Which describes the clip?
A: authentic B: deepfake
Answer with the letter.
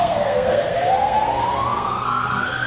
B